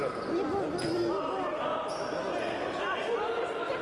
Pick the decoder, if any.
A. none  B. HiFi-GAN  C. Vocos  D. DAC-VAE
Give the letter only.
A